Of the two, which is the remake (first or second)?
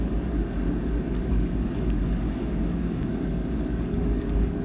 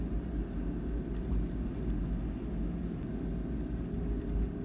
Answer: first